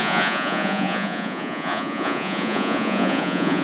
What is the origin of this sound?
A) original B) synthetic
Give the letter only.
B